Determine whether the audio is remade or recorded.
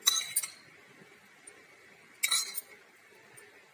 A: recorded